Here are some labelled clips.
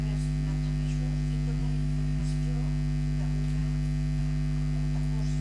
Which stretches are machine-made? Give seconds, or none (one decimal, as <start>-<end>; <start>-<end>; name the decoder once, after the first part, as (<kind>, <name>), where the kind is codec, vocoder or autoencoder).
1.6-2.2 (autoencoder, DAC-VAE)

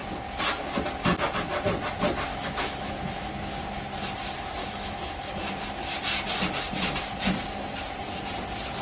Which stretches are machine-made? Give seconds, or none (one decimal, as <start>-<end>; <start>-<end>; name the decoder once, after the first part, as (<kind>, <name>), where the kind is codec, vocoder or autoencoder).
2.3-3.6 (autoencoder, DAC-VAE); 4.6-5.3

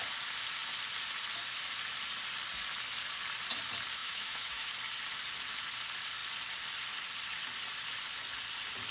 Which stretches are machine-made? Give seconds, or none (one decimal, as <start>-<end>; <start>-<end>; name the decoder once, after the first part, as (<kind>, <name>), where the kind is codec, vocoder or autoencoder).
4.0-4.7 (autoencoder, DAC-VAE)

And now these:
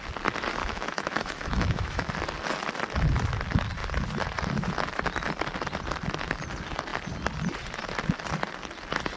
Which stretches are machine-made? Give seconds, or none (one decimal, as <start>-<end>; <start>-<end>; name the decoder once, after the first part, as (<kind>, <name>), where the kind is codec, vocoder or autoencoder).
0.6-2.1 (autoencoder, DAC-VAE)

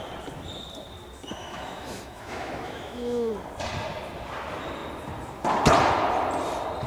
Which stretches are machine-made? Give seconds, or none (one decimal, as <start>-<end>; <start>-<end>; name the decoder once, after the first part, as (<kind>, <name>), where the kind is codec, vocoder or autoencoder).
1.4-3.3 (autoencoder, DAC-VAE)

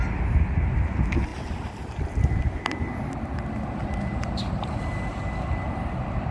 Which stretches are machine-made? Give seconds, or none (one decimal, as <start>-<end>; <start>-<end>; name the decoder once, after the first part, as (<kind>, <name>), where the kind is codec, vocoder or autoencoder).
none

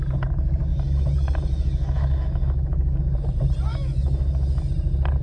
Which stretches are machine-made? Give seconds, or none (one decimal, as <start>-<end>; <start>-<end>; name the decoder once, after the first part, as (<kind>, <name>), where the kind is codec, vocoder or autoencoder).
0.7-3.0 (autoencoder, DAC-VAE); 3.7-4.7

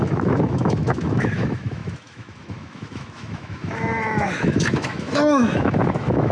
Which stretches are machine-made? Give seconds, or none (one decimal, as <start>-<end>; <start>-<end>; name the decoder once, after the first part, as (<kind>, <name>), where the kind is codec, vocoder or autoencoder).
0.0-6.3 (autoencoder, DAC-VAE)